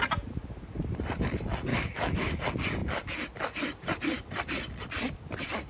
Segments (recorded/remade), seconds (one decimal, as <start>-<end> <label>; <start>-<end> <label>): 0.0-1.7 recorded; 1.7-2.4 remade; 2.4-5.7 recorded